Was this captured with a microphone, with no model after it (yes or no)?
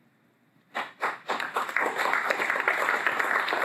yes